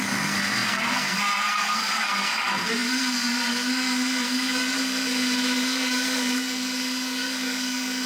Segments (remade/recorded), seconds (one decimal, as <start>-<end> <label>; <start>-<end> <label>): 0.0-8.1 remade